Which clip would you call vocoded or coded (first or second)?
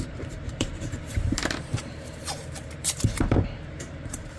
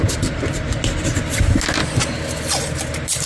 first